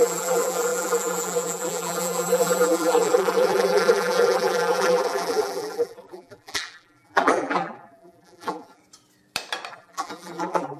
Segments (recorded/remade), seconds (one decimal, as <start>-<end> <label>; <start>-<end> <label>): 0.0-8.8 remade; 8.8-9.7 recorded; 9.7-10.8 remade